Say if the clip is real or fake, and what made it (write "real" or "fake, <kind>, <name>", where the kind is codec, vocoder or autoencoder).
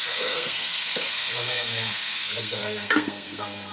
fake, codec, SNAC